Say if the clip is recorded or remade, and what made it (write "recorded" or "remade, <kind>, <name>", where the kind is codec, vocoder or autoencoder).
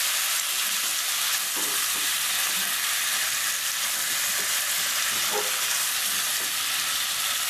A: recorded